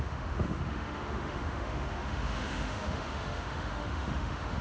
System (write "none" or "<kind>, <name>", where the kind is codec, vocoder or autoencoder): autoencoder, DAC-VAE